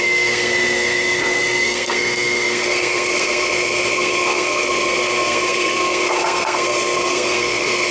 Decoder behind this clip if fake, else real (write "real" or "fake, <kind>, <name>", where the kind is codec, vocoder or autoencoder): fake, codec, SNAC